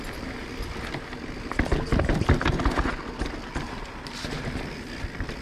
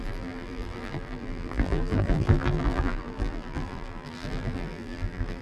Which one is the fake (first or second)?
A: second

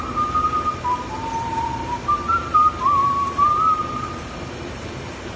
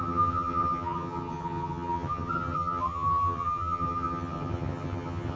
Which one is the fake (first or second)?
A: second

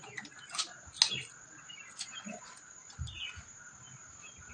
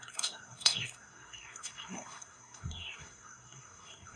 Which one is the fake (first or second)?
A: second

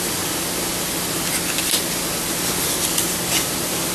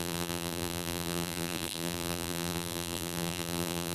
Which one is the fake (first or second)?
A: second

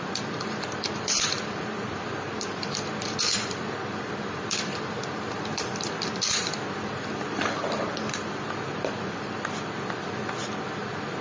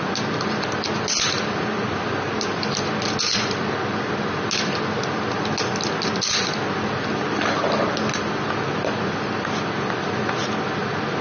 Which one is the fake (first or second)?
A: first